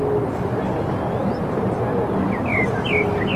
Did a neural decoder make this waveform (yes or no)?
no